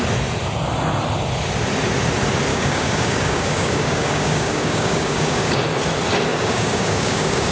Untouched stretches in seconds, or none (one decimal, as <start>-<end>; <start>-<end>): 0.0-2.5; 5.5-6.3